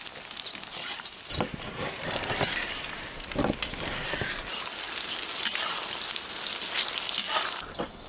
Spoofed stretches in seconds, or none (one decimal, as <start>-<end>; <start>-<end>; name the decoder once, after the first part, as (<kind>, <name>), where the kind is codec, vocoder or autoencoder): 0.7-2.8 (vocoder, BigVGAN v2)